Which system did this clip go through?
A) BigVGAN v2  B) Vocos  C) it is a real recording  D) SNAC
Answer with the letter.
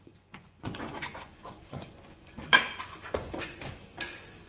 B